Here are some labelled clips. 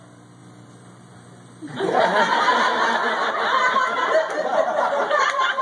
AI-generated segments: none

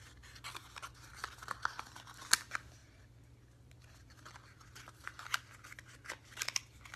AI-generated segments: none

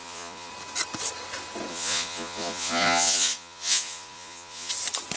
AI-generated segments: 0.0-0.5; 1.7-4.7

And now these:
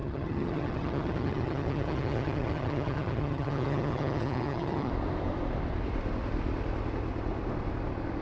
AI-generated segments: 0.0-4.9

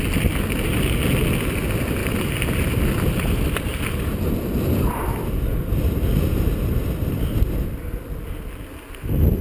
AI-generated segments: 2.0-5.3